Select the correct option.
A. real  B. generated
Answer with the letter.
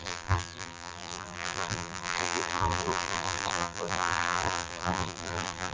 B